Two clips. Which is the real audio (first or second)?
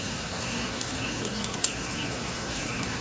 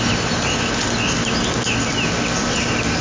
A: second